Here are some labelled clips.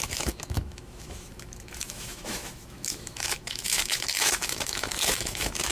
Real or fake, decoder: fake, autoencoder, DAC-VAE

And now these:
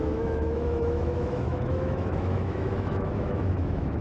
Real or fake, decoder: fake, autoencoder, DAC-VAE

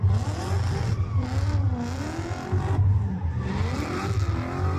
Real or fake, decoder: real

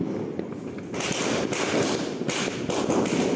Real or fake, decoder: real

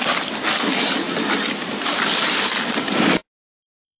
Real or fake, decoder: real